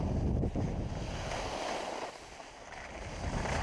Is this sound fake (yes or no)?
no